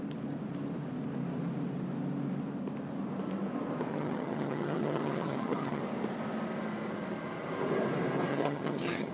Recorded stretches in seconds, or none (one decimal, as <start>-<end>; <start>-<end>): 0.0-3.9; 5.8-8.3